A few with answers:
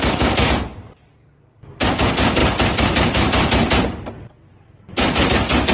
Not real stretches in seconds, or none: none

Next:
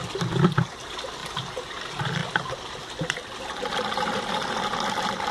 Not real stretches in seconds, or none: none

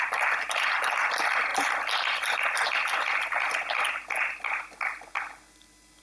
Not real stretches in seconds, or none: none

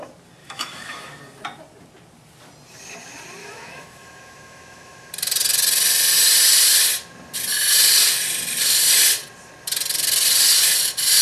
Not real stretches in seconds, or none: 0.4-1.2 (autoencoder, DAC-VAE); 3.4-5.1

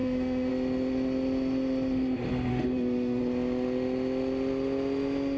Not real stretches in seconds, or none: 0.0-0.5 (autoencoder, DAC-VAE); 2.5-3.2